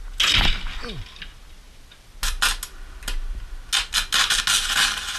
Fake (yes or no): no